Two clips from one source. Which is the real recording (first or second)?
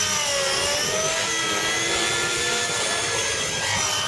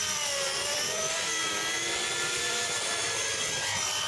first